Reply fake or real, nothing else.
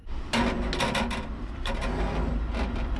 real